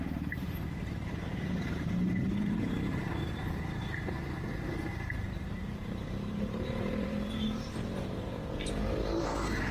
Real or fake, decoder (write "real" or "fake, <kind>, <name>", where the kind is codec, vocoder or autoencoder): fake, vocoder, BigVGAN v2